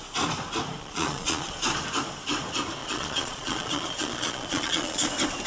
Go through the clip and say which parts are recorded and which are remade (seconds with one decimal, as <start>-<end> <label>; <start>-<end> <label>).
0.0-0.8 recorded; 0.8-1.6 remade; 1.6-2.8 recorded; 2.8-5.1 remade; 5.1-5.5 recorded